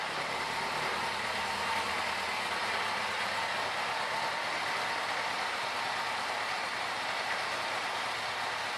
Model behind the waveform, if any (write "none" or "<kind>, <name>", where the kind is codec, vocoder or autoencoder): none